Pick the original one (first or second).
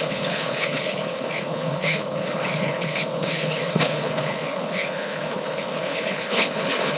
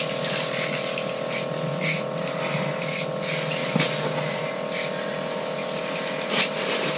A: second